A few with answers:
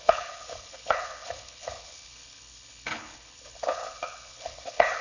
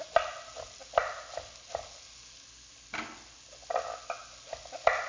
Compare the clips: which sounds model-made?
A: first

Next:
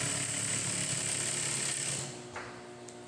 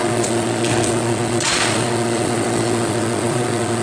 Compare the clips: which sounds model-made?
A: second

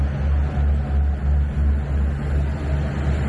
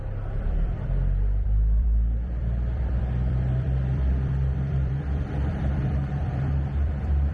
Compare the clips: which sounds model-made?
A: second